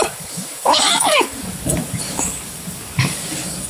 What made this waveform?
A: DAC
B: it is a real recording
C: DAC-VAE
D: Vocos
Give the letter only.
A